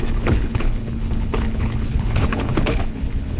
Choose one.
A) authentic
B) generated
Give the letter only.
B